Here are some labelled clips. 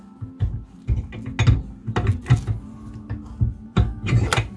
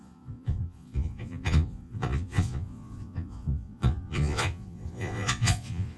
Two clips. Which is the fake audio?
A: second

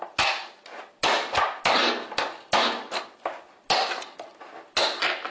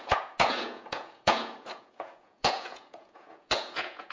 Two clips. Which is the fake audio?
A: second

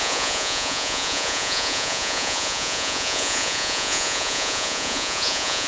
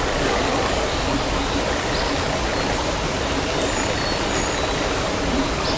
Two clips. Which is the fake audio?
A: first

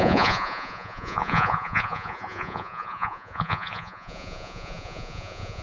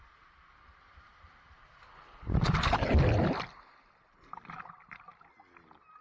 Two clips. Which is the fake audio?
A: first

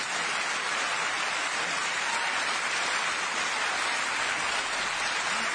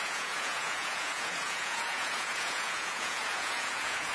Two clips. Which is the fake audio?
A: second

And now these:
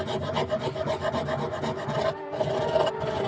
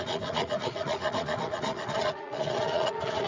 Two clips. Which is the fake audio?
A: second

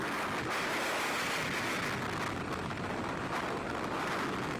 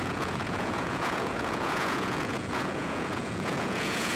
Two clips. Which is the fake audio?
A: second